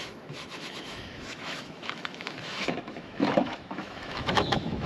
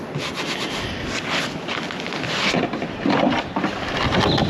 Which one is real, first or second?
second